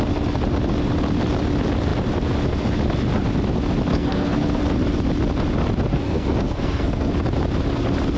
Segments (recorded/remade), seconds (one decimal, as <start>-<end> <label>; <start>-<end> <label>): 0.0-3.9 recorded; 3.9-4.6 remade; 4.6-5.9 recorded; 5.9-7.1 remade; 7.1-8.2 recorded